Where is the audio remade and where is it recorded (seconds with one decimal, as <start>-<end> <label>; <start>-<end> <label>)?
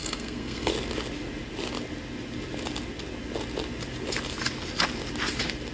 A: 0.0-0.7 remade; 0.7-5.7 recorded